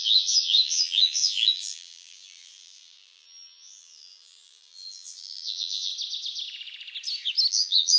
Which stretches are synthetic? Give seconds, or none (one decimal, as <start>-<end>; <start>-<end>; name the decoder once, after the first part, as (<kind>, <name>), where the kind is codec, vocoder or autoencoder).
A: 0.0-5.9 (vocoder, BigVGAN v2); 7.5-8.0